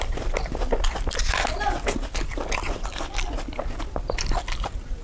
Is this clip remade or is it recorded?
recorded